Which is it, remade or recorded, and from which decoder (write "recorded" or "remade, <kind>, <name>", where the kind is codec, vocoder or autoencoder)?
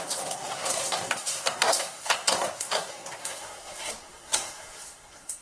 remade, codec, SNAC